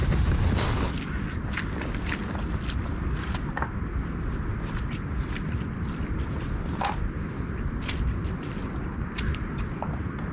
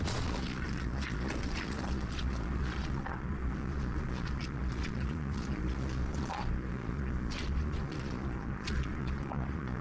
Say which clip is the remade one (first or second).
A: second